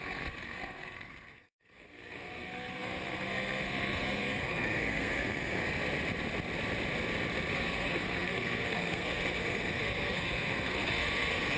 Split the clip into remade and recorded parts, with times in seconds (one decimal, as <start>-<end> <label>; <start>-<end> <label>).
0.0-5.6 remade; 5.6-7.5 recorded; 7.5-11.6 remade

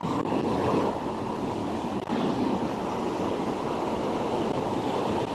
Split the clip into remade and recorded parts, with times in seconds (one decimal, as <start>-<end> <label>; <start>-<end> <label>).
0.0-5.3 recorded

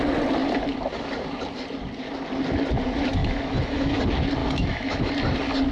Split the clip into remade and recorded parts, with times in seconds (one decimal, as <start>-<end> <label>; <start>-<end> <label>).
0.0-3.2 recorded; 3.2-4.0 remade; 4.0-4.4 recorded; 4.4-5.1 remade; 5.1-5.7 recorded

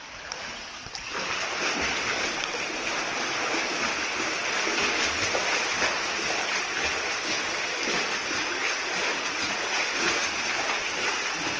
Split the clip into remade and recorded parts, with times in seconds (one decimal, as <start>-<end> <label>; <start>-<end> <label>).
0.0-9.1 recorded; 9.1-10.3 remade; 10.3-11.6 recorded

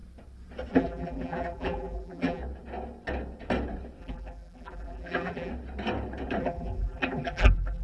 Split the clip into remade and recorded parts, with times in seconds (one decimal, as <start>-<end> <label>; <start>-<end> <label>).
0.0-0.7 recorded; 0.7-2.4 remade; 2.4-4.0 recorded; 4.0-5.5 remade; 5.5-6.4 recorded; 6.4-7.8 remade

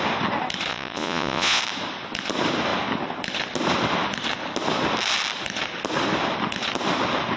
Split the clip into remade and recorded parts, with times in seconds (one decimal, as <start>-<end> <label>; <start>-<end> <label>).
0.0-0.7 recorded; 0.7-1.6 remade; 1.6-7.4 recorded

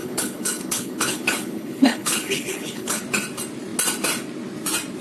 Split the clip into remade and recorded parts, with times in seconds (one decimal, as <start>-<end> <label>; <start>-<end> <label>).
0.0-3.0 remade; 3.0-5.0 recorded

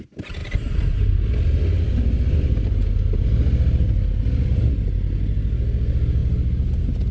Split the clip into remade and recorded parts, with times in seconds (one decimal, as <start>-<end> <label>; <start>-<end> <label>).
0.0-7.1 recorded